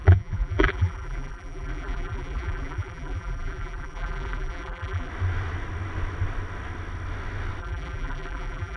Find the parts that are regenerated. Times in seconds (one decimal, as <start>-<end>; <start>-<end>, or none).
0.0-5.1; 7.6-8.8

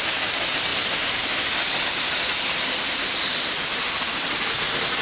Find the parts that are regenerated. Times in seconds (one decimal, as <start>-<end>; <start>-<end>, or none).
0.0-0.7; 2.1-5.0

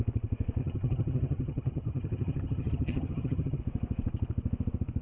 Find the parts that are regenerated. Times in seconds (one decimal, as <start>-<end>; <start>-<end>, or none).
0.6-3.6

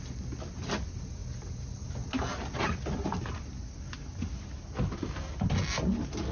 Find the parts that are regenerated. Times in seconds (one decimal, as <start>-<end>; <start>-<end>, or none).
none